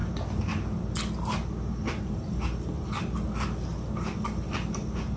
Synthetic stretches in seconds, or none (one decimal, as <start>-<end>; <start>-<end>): none